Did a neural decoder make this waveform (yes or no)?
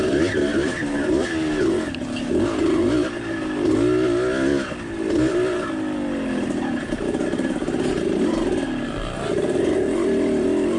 no